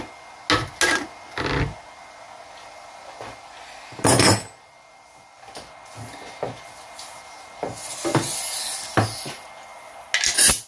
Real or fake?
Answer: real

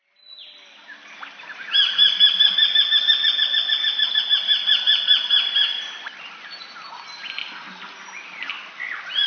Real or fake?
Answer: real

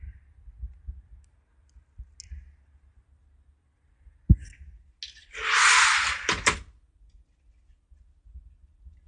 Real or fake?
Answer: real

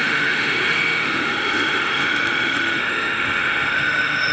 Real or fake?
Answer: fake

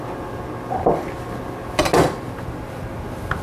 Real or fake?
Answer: real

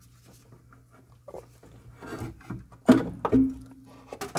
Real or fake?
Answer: real